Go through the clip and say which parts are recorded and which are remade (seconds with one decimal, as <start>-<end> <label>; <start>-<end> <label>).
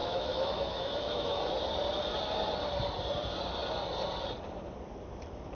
0.0-1.4 remade; 1.4-5.5 recorded